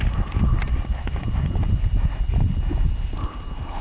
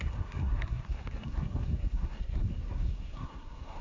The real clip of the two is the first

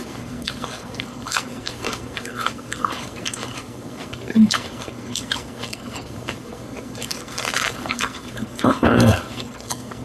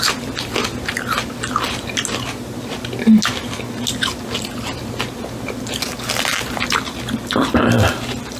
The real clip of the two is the second